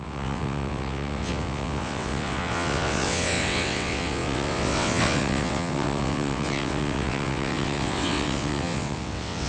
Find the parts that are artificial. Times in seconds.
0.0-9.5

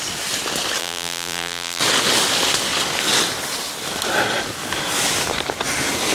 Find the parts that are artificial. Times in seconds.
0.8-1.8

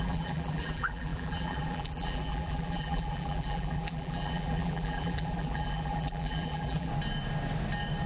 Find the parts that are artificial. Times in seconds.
0.0-6.9

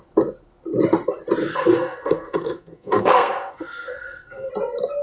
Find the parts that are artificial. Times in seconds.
1.5-4.5

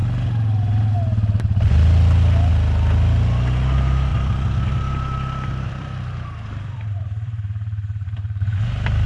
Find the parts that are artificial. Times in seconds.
4.1-8.6